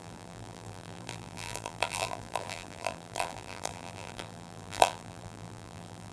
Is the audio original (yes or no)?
no